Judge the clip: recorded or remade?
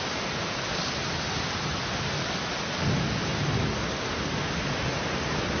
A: recorded